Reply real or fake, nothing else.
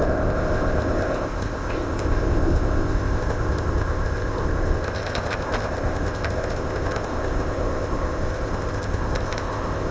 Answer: fake